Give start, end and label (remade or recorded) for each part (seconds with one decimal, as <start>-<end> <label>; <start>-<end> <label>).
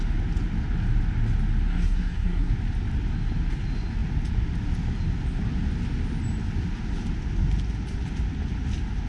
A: 0.0-1.7 recorded; 1.7-2.5 remade; 2.5-9.1 recorded